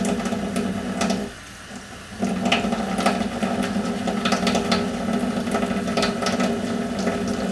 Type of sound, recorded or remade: recorded